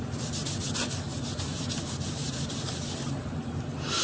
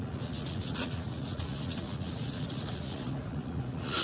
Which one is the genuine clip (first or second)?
first